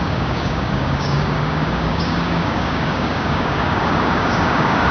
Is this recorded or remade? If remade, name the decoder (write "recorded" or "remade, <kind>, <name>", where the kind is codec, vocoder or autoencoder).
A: remade, codec, DAC